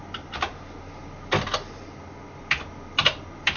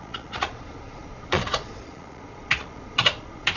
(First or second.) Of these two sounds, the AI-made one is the second